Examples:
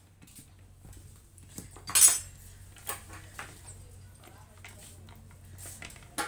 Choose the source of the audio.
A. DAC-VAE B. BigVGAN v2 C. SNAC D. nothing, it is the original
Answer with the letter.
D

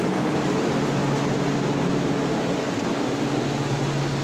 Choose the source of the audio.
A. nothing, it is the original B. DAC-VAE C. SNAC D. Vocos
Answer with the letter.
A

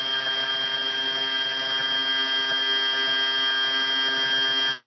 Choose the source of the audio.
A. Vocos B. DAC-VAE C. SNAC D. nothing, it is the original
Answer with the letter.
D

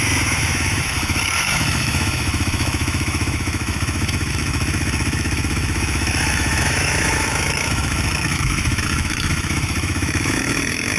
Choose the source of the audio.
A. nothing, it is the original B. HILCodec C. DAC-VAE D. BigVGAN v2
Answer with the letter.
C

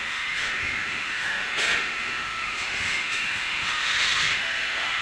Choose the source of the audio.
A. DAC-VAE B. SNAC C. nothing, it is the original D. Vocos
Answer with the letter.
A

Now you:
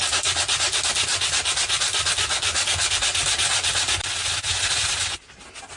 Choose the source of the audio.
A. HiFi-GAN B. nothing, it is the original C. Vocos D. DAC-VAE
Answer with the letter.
B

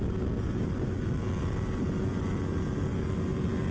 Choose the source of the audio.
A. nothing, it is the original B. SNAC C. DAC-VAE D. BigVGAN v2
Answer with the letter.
A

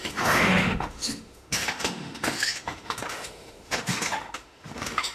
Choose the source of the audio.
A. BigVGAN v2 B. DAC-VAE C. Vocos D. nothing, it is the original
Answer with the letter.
B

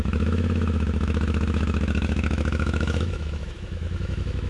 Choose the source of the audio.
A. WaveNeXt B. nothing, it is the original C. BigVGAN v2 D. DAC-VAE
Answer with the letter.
D